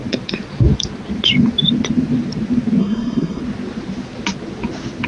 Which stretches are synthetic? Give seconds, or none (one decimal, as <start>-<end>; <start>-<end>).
2.8-3.4